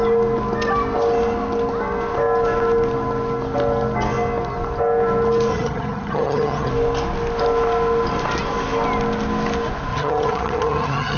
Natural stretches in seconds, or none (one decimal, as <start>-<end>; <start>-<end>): 0.0-5.5; 6.7-9.9